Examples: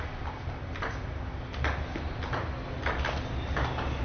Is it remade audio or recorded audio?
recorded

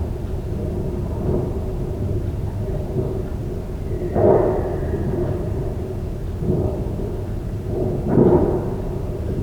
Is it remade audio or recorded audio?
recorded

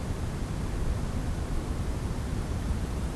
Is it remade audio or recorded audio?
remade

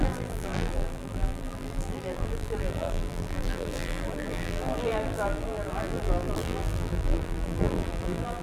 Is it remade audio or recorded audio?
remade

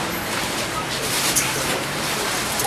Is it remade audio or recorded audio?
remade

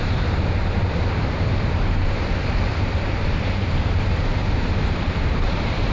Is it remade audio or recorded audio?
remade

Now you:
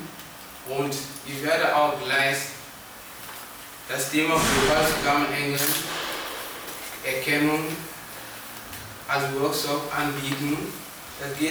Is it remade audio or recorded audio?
recorded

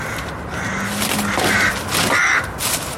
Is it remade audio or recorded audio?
recorded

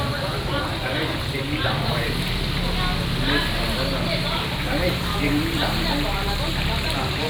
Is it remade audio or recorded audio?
recorded